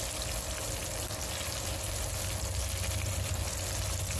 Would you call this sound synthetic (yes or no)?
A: no